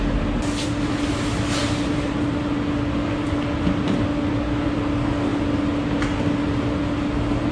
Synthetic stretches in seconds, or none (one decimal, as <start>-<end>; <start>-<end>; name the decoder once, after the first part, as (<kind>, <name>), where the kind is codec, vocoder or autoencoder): 1.6-2.4 (vocoder, BigVGAN v2)